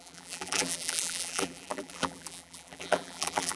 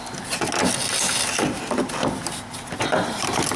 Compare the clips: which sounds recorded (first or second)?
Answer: second